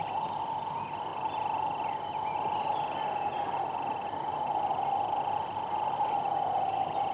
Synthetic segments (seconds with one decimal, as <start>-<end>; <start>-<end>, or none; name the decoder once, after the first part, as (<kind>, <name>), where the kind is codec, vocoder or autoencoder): none